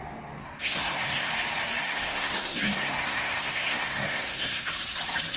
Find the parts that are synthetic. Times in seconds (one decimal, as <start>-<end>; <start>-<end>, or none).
0.4-1.3; 1.8-4.7